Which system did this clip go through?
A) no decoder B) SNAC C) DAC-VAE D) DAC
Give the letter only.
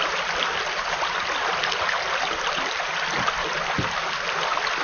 A